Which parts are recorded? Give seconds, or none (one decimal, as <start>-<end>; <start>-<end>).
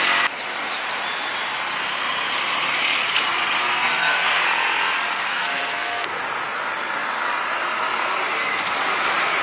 0.0-3.6; 4.4-5.3; 6.1-9.4